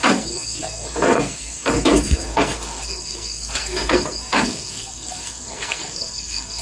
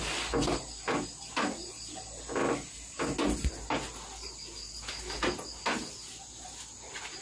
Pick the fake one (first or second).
first